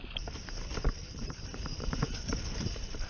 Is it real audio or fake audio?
fake